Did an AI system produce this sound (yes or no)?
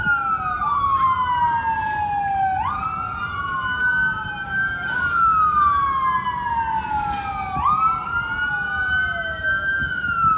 no